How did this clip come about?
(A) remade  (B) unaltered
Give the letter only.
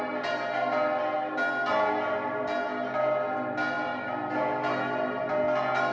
B